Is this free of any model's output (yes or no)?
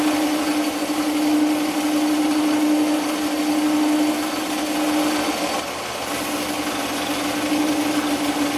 yes